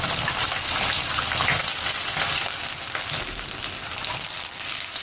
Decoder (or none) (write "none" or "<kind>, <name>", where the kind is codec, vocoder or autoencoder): none